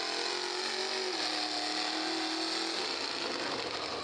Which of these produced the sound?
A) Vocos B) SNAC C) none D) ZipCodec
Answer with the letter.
C